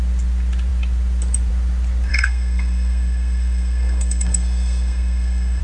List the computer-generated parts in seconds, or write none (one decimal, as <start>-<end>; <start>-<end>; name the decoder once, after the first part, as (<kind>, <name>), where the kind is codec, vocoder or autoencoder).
2.1-5.6 (codec, SNAC)